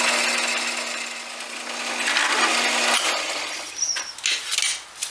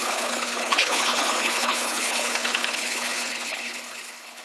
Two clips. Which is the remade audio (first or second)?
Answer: second